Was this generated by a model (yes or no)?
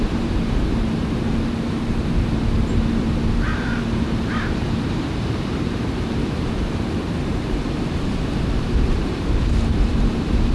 yes